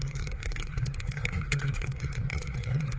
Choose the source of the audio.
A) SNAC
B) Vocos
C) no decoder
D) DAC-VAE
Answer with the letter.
A